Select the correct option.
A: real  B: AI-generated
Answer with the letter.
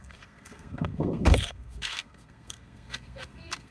B